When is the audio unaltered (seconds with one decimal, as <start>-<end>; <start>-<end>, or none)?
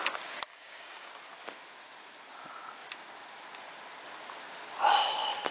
0.0-0.5; 1.1-5.5